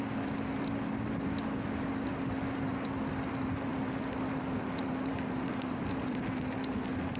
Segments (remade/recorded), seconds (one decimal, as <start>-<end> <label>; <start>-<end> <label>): 0.0-7.2 recorded